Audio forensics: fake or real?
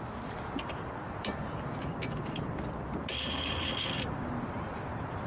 real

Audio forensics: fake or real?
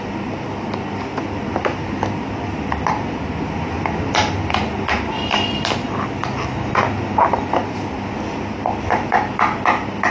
real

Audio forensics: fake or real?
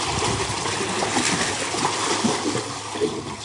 real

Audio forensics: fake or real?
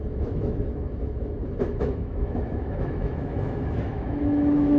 fake